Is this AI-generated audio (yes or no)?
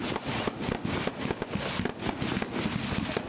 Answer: no